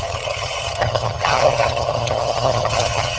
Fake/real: fake